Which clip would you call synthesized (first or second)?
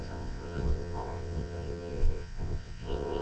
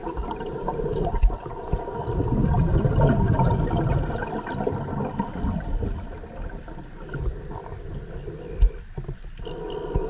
first